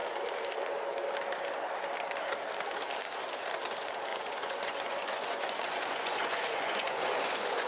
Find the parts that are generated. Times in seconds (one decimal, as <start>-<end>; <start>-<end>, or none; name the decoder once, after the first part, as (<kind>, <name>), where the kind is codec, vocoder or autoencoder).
4.1-7.7 (vocoder, Vocos)